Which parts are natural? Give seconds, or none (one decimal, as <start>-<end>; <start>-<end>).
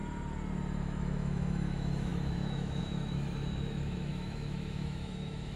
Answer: 0.0-0.8